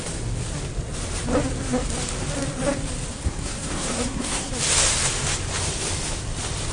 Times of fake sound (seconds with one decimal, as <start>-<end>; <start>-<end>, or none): 3.1-4.5